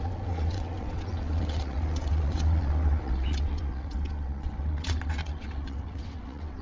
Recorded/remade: remade